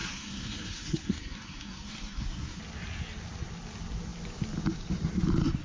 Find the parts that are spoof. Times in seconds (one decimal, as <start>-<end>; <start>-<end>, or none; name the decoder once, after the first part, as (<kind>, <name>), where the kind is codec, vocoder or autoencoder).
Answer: 0.0-2.6 (codec, SNAC)

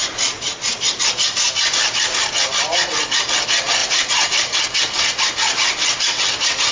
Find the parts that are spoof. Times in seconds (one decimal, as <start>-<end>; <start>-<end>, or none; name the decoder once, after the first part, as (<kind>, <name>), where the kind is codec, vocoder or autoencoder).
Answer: 0.0-1.0 (vocoder, BigVGAN v2); 3.8-4.6

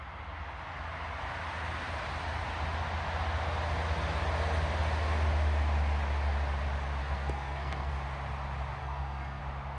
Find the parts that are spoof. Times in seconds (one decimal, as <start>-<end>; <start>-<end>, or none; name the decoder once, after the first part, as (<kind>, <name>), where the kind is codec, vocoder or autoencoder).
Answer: 7.0-7.9 (codec, SNAC); 8.8-9.4

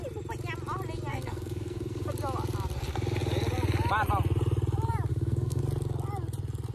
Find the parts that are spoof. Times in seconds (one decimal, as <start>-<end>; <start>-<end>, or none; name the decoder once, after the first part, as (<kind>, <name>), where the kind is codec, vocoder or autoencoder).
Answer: 1.1-2.1 (codec, SNAC); 5.1-5.6